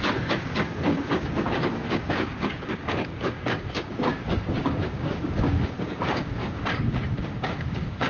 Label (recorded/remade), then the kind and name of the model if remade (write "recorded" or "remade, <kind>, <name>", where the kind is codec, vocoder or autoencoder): remade, codec, DAC